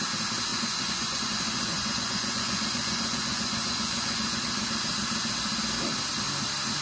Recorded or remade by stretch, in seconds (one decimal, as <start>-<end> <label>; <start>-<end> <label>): 0.0-0.5 recorded; 0.5-4.4 remade; 4.4-6.8 recorded